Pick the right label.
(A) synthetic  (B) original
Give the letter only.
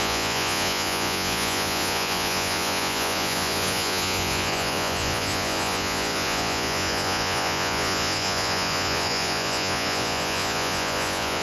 A